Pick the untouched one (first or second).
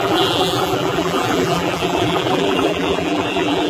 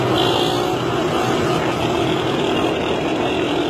second